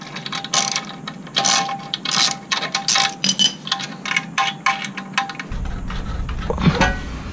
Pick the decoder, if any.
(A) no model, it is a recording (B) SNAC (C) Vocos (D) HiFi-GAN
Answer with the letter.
A